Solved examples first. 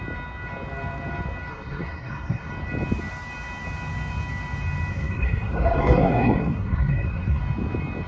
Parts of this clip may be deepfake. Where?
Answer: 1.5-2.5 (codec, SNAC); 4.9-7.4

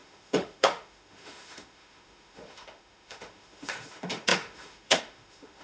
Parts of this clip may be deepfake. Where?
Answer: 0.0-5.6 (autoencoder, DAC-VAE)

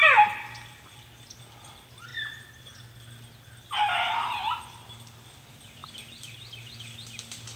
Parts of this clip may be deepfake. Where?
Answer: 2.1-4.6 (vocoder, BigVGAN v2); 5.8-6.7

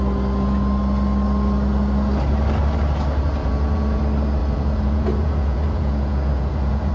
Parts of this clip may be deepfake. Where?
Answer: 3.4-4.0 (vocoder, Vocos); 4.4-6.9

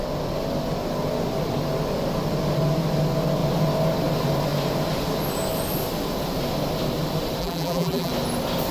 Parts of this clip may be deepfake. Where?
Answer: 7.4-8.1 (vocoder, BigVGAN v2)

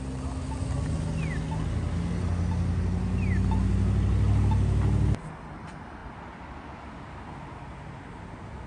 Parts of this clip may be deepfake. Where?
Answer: none

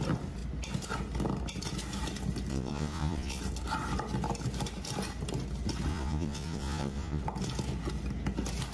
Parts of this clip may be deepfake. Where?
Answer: 2.5-3.4 (vocoder, Vocos); 5.9-7.2

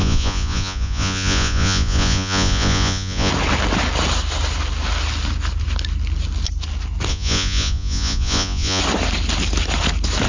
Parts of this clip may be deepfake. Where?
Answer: 0.0-3.3 (vocoder, Vocos); 7.1-8.8